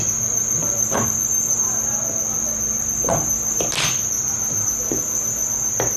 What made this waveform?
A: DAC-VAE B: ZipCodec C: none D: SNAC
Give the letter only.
C